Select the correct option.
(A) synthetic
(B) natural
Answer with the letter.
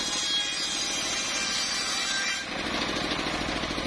B